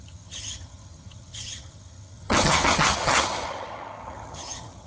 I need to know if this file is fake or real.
fake